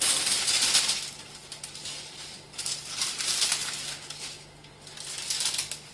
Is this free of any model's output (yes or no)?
yes